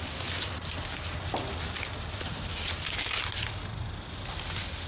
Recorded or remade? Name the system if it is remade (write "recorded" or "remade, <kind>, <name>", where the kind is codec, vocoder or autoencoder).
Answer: recorded